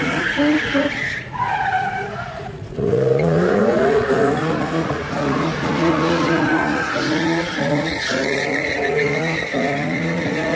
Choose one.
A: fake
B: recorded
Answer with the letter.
A